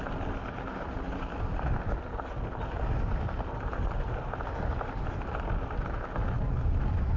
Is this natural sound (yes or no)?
yes